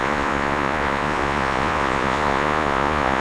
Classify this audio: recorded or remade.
remade